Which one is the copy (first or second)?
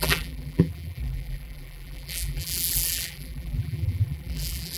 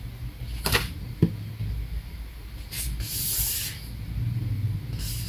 first